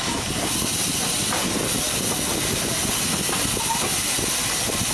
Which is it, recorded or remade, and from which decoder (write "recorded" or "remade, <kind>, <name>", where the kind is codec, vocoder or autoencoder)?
recorded